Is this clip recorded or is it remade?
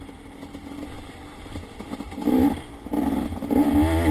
recorded